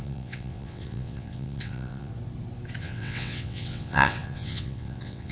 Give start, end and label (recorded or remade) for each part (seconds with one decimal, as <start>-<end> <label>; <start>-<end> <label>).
0.0-2.1 remade; 2.1-2.8 recorded; 2.8-5.3 remade